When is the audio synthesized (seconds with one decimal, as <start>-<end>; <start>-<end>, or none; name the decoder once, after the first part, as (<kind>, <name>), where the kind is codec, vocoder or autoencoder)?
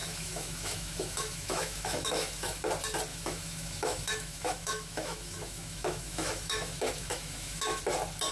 0.0-2.6 (autoencoder, DAC-VAE); 3.1-7.8